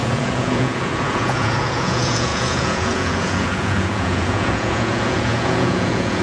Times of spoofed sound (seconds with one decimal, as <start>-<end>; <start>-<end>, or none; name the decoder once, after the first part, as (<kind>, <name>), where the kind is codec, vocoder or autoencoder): 0.0-6.2 (vocoder, Vocos)